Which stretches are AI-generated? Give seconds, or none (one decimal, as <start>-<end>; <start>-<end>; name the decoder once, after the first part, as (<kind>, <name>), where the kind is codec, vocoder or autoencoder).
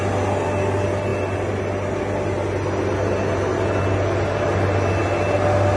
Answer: none